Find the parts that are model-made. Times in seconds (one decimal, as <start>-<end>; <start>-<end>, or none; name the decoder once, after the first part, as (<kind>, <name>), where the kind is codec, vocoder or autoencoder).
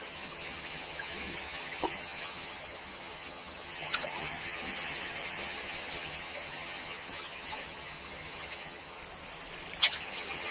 0.0-9.0 (vocoder, HiFi-GAN); 9.8-10.5